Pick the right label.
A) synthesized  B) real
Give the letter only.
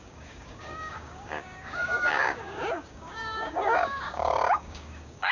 A